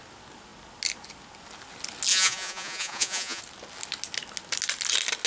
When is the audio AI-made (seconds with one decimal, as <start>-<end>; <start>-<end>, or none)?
2.1-3.4